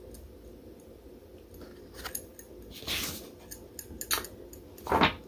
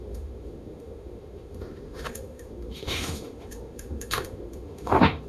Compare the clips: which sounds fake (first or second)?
second